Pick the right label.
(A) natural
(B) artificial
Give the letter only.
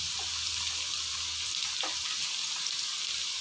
A